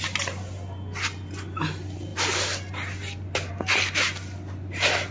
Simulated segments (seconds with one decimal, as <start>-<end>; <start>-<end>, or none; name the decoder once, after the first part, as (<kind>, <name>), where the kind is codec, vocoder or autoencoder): none